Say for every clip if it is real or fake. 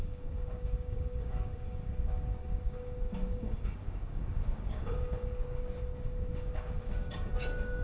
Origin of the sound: fake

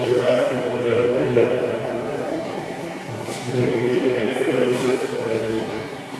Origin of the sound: fake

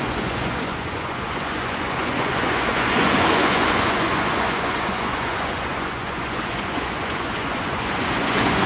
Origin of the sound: fake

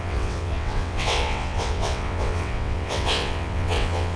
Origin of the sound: fake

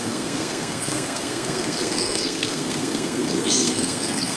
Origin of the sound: fake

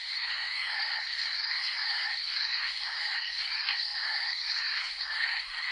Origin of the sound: fake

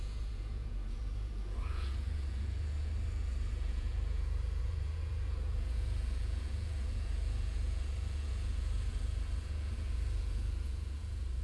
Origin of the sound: fake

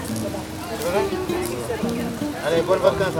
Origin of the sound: fake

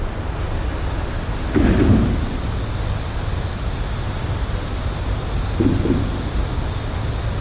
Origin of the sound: real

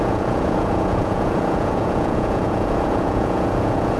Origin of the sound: fake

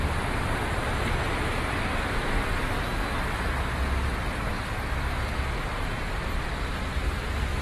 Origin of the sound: real